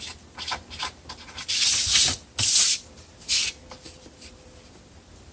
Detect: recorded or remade recorded